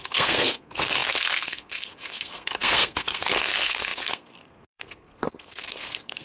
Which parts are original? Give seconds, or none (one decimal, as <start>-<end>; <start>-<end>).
none